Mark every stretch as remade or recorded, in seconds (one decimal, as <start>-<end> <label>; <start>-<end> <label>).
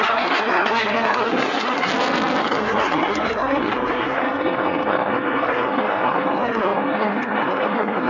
0.0-1.9 remade; 1.9-2.4 recorded; 2.4-8.1 remade